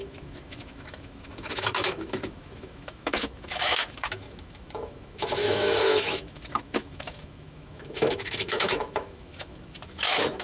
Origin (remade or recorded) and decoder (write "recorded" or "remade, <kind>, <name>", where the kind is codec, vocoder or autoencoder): remade, autoencoder, DAC-VAE